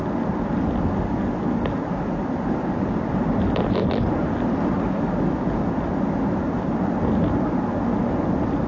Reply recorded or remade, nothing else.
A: recorded